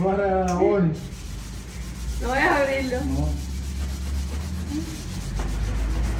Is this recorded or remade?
recorded